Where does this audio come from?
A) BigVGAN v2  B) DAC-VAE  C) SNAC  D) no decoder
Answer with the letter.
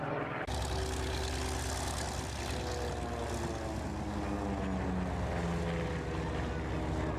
D